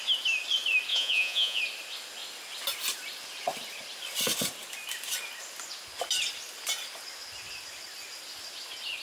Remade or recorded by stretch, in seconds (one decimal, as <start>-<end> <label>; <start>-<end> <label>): 0.0-0.9 recorded; 0.9-1.6 remade; 1.6-9.0 recorded